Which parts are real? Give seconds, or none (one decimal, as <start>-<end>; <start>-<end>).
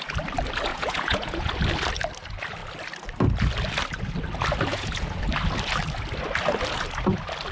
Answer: 0.0-0.7; 1.5-4.7; 5.2-7.5